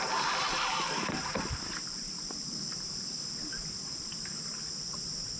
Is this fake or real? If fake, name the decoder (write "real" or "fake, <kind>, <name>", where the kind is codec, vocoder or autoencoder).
real